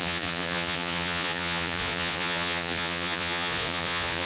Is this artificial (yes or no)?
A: yes